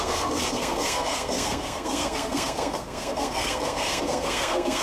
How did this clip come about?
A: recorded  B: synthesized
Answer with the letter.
B